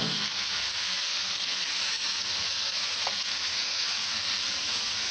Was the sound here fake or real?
fake